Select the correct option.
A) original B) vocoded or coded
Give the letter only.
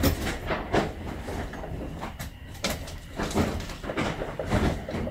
B